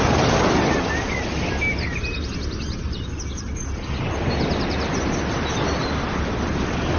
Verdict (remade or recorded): recorded